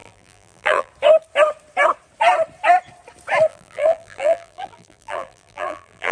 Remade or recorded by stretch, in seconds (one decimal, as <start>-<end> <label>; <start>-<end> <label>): 0.0-0.9 remade; 0.9-3.5 recorded; 3.5-6.1 remade